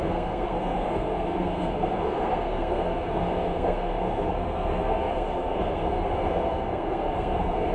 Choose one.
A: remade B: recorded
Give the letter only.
A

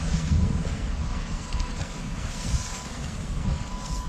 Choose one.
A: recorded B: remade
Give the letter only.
B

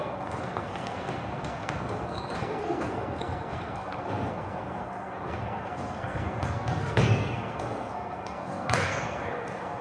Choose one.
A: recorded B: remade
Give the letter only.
B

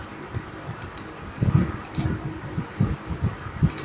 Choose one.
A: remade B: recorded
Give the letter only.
B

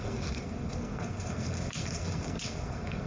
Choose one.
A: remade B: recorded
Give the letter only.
A